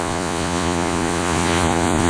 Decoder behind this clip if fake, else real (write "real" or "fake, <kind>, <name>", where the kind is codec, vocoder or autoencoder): fake, vocoder, Vocos